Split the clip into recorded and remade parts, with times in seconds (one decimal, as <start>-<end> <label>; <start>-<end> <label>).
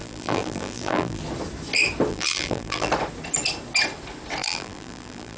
0.0-1.2 remade; 1.2-2.1 recorded; 2.1-2.9 remade; 2.9-4.4 recorded; 4.4-5.4 remade